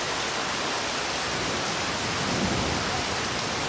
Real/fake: real